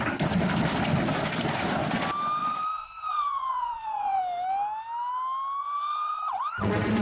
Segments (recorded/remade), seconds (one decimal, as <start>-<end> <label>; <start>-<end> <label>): 0.0-2.4 recorded; 2.4-4.2 remade; 4.2-5.6 recorded; 5.6-7.0 remade